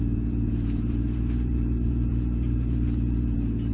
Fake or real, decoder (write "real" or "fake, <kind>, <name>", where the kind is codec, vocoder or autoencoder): fake, vocoder, Vocos